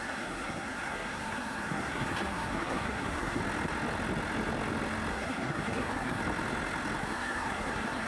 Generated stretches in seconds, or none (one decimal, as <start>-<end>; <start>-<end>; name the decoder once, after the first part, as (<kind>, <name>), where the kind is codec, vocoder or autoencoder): 0.0-3.4 (codec, SNAC); 5.1-6.2; 7.0-8.1